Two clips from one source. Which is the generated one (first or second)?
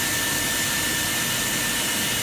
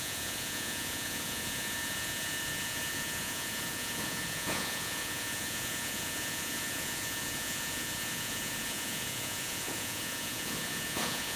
second